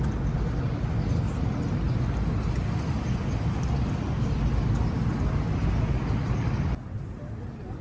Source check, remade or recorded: recorded